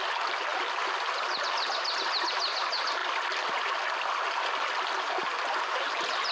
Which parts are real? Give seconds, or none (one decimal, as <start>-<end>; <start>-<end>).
0.0-6.3